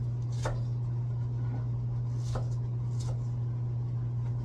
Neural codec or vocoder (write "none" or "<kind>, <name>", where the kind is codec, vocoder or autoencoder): none